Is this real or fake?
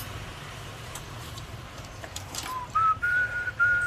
fake